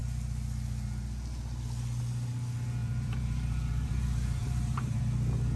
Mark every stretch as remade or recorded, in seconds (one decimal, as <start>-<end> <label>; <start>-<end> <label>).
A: 0.0-2.8 recorded; 2.8-5.0 remade; 5.0-5.6 recorded